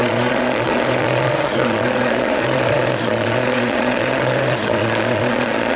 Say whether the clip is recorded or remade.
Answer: remade